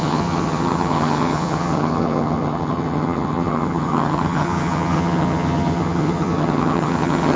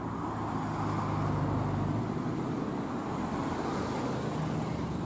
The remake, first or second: first